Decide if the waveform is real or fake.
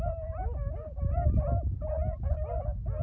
real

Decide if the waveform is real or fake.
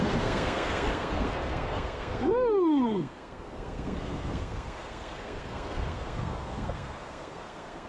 fake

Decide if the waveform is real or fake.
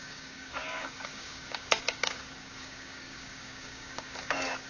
fake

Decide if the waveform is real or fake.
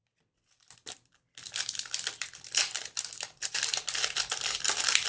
fake